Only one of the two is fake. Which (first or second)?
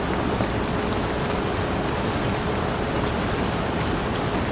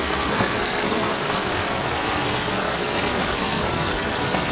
second